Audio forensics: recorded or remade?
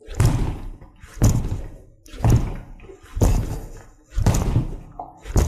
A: recorded